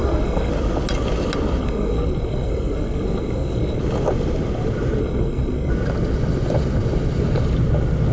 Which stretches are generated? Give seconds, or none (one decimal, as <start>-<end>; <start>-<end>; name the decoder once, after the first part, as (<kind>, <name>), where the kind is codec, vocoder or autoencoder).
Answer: 0.0-0.5 (codec, SNAC); 1.6-3.8; 5.0-5.7